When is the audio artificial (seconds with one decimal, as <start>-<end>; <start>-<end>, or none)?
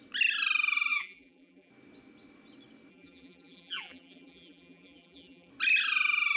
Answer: 0.9-1.7; 2.9-5.5